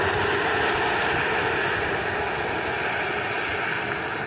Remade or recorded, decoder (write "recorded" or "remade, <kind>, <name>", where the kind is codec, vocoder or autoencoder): recorded